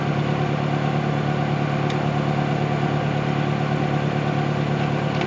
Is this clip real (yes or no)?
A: yes